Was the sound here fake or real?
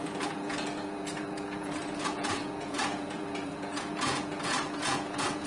fake